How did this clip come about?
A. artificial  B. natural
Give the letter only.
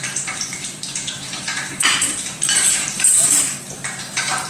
A